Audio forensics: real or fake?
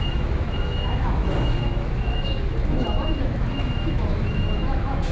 fake